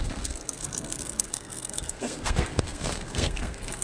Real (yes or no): no